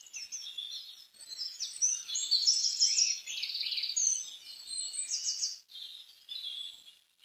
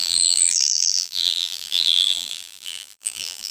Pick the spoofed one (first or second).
second